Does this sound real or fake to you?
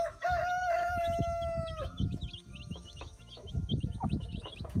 fake